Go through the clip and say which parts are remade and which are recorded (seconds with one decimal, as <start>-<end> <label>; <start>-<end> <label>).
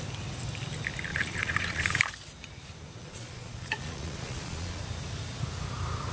0.0-1.1 recorded; 1.1-2.0 remade; 2.0-3.0 recorded; 3.0-4.8 remade; 4.8-6.1 recorded